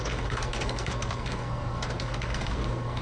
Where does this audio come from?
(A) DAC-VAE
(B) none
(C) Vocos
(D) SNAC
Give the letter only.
D